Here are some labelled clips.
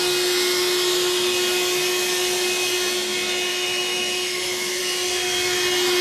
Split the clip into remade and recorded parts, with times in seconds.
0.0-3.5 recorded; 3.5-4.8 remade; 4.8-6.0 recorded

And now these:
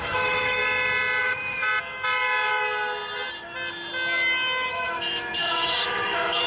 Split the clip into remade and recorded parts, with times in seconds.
0.0-0.6 remade; 0.6-1.2 recorded; 1.2-1.6 remade; 1.6-4.7 recorded; 4.7-6.5 remade

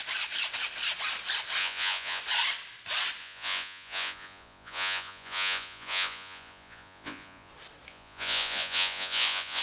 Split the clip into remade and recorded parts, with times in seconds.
0.0-1.6 recorded; 1.6-2.2 remade; 2.2-3.2 recorded; 3.2-7.5 remade; 7.5-7.9 recorded; 7.9-9.6 remade